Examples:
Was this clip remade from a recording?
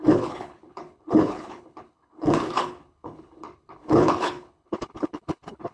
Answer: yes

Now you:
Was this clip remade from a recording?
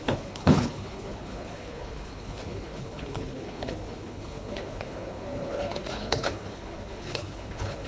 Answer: yes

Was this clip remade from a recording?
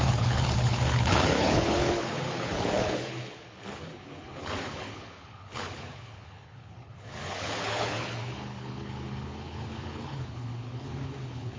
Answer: yes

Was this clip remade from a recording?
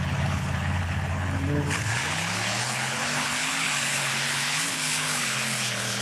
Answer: yes